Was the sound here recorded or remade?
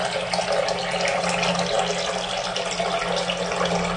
recorded